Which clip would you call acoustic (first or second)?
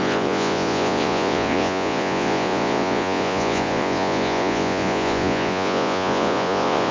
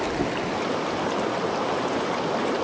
second